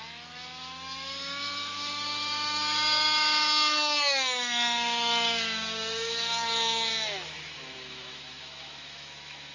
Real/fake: fake